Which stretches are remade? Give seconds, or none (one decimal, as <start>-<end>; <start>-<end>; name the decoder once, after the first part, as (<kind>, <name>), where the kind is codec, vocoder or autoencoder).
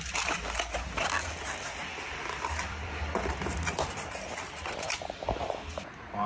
1.8-5.6 (vocoder, BigVGAN v2)